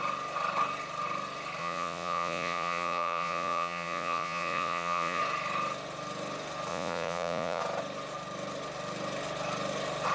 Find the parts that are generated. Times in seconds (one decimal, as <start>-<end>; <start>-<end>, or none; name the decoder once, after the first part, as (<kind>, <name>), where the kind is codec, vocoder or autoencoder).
1.6-5.2 (vocoder, Vocos); 6.7-7.6